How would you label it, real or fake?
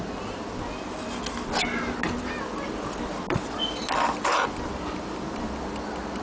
real